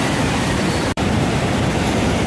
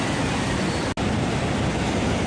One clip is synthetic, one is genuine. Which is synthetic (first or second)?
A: first